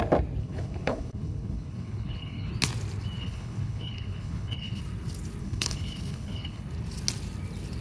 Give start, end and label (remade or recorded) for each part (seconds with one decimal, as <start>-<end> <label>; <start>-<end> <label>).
0.0-0.4 recorded; 0.4-2.5 remade; 2.5-3.2 recorded; 3.2-4.8 remade; 4.8-5.4 recorded; 5.4-6.6 remade; 6.6-7.8 recorded